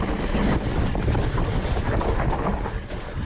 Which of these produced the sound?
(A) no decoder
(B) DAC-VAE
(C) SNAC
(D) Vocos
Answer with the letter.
A